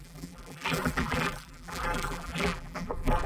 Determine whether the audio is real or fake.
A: fake